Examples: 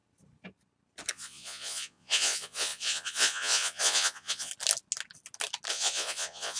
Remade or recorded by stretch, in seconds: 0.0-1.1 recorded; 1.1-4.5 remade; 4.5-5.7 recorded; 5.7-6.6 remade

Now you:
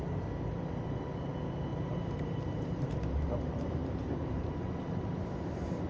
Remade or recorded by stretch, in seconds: 0.0-1.7 recorded; 1.7-5.2 remade; 5.2-5.9 recorded

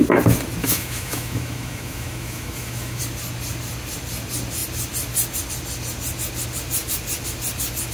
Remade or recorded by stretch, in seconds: 0.0-0.6 recorded; 0.6-3.0 remade; 3.0-7.9 recorded

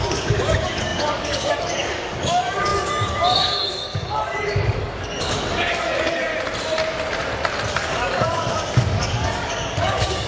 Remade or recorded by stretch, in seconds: 0.0-6.3 remade; 6.3-7.7 recorded; 7.7-10.3 remade

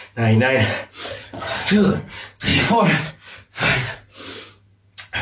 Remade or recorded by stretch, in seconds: 0.0-1.1 recorded; 1.1-2.1 remade; 2.1-5.2 recorded

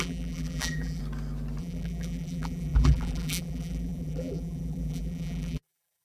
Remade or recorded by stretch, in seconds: 0.0-1.0 remade; 1.0-1.6 recorded; 1.6-6.0 remade